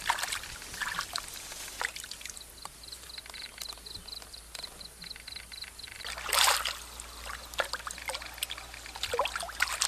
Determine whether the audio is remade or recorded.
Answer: recorded